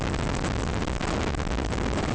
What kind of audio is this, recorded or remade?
recorded